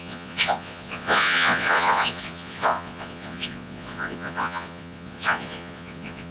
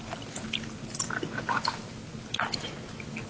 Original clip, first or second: second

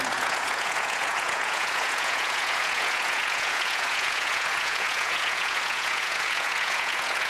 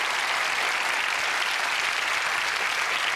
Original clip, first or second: second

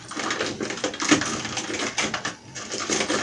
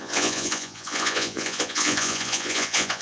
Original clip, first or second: first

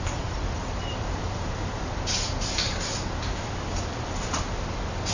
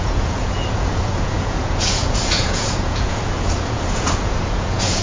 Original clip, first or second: first